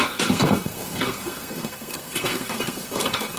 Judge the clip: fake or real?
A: fake